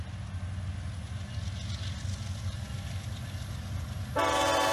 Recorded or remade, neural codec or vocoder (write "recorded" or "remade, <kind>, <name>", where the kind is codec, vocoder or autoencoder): recorded